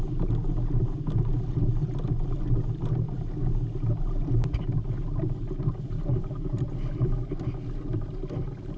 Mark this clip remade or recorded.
recorded